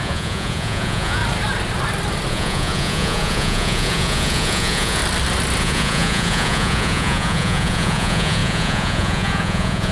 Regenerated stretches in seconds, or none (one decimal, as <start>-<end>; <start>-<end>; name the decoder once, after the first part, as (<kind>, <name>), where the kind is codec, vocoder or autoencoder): 0.0-1.2 (vocoder, Vocos); 2.3-5.0; 5.6-9.9